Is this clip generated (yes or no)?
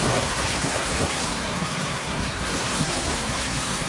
yes